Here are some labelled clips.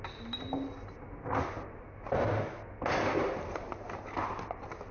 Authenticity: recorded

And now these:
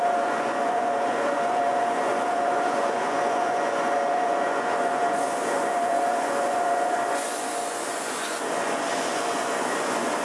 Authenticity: remade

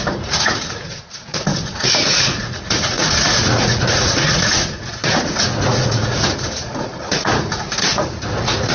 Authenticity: remade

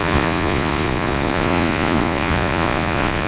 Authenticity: remade